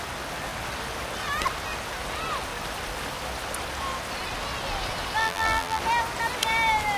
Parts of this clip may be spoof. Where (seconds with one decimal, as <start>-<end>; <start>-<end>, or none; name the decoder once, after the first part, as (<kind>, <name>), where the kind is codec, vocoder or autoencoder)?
5.2-5.8 (vocoder, BigVGAN v2)